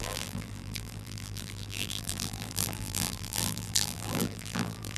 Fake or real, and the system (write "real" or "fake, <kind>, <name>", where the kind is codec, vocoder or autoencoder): fake, vocoder, BigVGAN v2